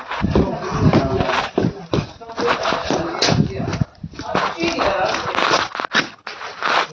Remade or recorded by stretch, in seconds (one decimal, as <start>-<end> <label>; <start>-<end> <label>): 0.0-6.9 recorded